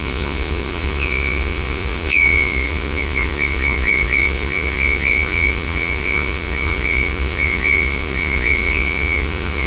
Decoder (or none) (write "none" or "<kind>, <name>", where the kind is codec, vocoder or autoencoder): vocoder, Vocos